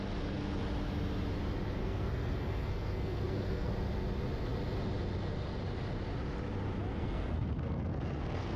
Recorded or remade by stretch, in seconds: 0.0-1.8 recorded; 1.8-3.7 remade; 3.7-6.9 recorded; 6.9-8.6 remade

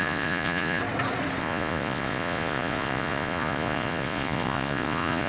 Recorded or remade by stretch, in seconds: 0.0-0.8 remade; 0.8-1.4 recorded; 1.4-5.3 remade

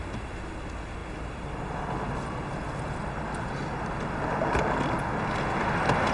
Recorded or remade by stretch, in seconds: 0.0-6.1 recorded